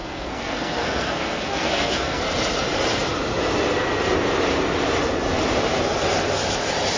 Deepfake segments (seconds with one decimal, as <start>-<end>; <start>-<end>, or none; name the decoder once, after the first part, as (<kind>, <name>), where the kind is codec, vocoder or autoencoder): 0.0-2.2 (codec, SNAC)